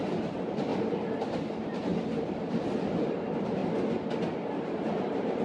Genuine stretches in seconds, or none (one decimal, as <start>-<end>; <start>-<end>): 0.7-1.2; 1.9-2.9; 3.6-4.5